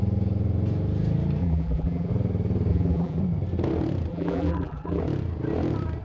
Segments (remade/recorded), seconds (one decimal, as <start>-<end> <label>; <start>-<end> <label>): 0.0-1.4 recorded; 1.4-2.1 remade; 2.1-2.7 recorded; 2.7-3.2 remade; 3.2-4.1 recorded; 4.1-5.0 remade; 5.0-6.0 recorded